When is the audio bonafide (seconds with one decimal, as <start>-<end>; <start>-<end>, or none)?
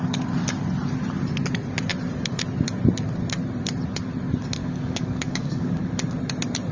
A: 0.0-4.6; 5.9-6.7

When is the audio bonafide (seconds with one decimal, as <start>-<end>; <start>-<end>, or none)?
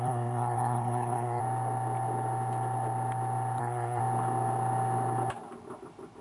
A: 1.4-3.6; 4.0-6.2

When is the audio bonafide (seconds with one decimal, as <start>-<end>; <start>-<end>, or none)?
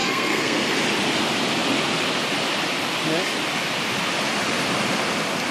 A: 0.8-5.5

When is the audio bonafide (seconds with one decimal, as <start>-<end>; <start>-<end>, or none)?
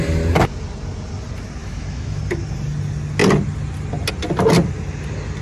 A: 0.0-1.6; 2.2-5.4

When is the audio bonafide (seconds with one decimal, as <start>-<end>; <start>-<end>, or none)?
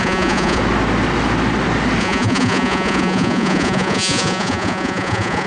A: 0.6-2.0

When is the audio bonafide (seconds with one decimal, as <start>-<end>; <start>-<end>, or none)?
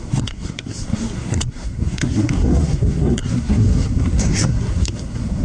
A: none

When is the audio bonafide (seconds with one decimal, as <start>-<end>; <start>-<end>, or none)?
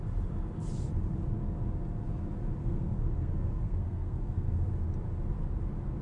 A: 0.0-2.6; 4.7-6.0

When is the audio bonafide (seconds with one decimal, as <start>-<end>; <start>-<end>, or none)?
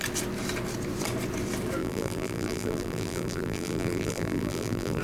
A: 0.0-1.8